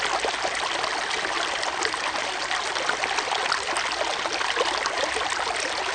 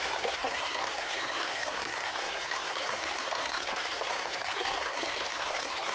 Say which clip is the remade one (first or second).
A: second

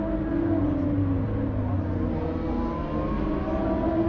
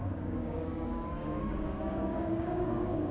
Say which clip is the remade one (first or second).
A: second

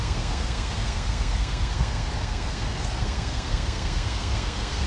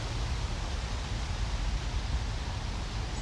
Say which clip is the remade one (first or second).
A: first